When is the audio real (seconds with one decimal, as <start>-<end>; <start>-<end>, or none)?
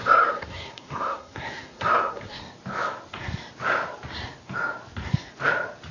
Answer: 2.4-5.9